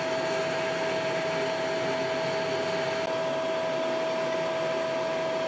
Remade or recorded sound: recorded